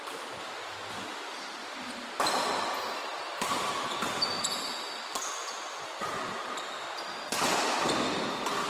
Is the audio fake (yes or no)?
no